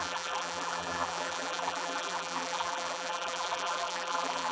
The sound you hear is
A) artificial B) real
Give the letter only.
A